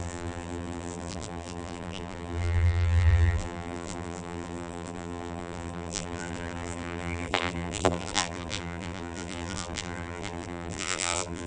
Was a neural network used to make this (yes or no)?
yes